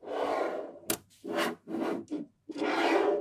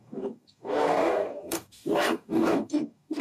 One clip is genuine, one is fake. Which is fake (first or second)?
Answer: second